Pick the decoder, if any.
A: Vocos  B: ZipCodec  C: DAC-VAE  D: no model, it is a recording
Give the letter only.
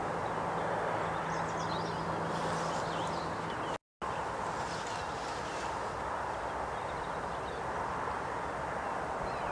D